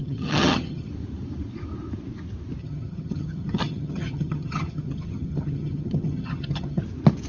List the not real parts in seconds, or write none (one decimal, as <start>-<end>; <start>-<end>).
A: 0.0-0.9; 2.6-6.8